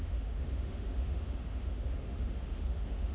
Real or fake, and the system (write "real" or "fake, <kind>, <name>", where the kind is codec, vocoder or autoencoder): fake, autoencoder, DAC-VAE